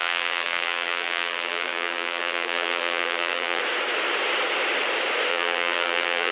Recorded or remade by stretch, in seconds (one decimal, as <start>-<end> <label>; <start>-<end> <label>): 0.0-3.6 remade; 3.6-5.3 recorded; 5.3-6.3 remade